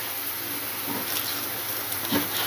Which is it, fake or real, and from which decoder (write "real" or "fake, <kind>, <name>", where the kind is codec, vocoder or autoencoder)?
real